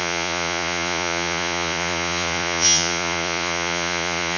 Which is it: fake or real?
fake